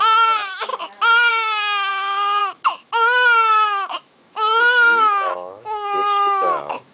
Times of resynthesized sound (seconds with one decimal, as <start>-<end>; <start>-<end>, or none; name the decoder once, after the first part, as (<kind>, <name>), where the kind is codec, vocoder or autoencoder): 0.0-0.7 (autoencoder, DAC-VAE); 1.3-1.9; 2.4-6.9